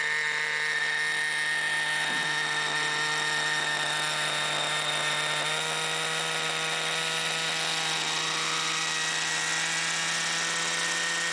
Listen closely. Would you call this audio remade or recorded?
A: recorded